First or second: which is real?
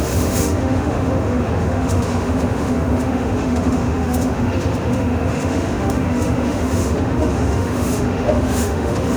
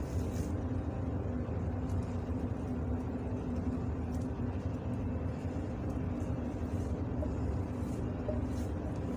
second